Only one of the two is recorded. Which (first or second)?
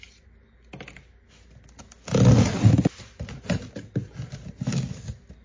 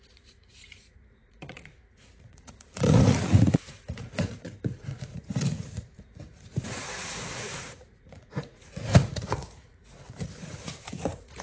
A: first